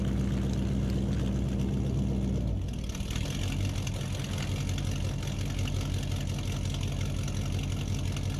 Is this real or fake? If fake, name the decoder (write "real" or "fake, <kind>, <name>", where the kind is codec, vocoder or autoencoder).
real